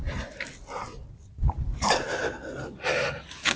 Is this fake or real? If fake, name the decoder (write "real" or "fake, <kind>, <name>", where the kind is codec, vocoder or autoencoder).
real